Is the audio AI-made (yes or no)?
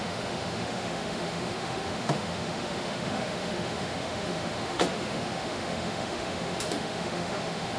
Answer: yes